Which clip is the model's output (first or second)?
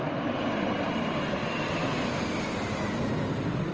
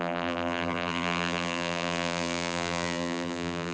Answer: second